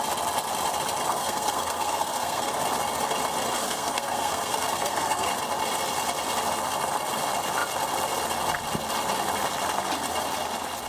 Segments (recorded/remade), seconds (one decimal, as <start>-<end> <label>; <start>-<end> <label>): 0.0-1.1 recorded; 1.1-2.5 remade; 2.5-3.6 recorded; 3.6-5.3 remade; 5.3-10.9 recorded